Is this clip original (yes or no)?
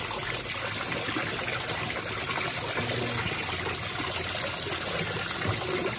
yes